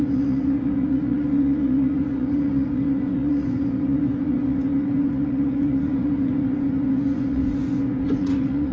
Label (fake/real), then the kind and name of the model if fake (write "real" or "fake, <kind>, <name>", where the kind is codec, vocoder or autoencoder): fake, vocoder, Vocos